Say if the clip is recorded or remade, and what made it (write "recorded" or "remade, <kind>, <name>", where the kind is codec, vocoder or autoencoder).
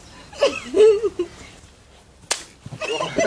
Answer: recorded